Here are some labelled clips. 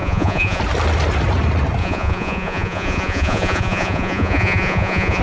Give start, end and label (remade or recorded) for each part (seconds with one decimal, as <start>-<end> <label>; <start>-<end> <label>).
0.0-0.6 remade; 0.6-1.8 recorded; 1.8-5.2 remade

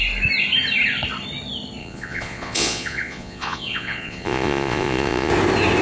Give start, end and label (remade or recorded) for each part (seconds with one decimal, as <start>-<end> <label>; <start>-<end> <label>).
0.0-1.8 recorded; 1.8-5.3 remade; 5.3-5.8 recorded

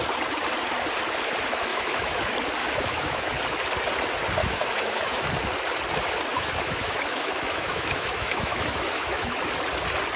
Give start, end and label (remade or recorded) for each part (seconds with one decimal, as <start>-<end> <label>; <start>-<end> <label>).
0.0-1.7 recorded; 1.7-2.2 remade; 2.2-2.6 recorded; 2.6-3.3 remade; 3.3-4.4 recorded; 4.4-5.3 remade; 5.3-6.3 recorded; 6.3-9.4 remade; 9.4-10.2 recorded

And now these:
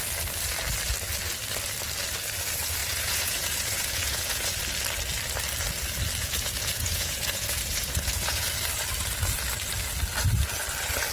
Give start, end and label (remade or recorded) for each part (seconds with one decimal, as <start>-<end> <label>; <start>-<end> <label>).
0.0-2.8 recorded; 2.8-4.6 remade; 4.6-6.2 recorded; 6.2-8.5 remade; 8.5-11.1 recorded

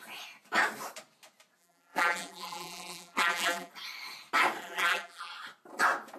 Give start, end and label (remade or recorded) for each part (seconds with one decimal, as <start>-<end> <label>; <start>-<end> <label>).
0.0-1.6 recorded; 1.6-3.7 remade; 3.7-4.6 recorded; 4.6-5.3 remade; 5.3-6.2 recorded

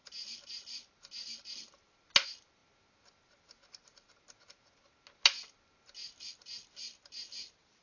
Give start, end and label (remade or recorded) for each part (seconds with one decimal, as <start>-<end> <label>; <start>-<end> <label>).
0.0-7.8 recorded

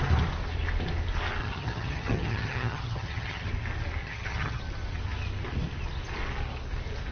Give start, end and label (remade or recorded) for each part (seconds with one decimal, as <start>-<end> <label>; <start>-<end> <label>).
0.0-1.4 recorded; 1.4-3.5 remade; 3.5-4.0 recorded; 4.0-4.6 remade; 4.6-7.1 recorded

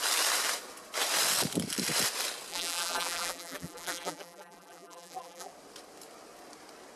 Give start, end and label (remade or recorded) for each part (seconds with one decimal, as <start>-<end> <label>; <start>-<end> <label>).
0.0-2.5 recorded; 2.5-5.5 remade; 5.5-7.0 recorded